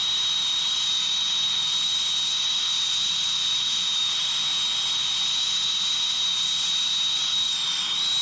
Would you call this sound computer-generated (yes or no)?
no